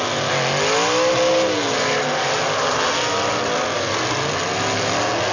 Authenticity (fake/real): real